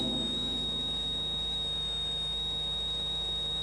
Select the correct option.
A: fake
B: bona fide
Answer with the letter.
A